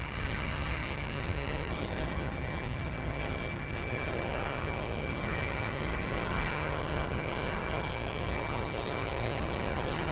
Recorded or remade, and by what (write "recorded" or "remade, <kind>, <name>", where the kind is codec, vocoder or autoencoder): remade, vocoder, HiFi-GAN